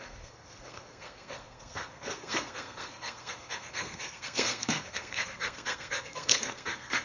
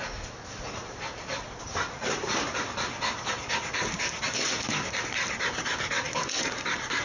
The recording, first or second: second